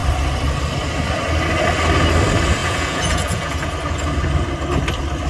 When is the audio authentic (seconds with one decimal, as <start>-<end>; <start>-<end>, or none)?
0.0-2.6; 3.7-5.3